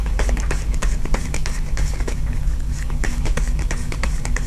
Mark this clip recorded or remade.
remade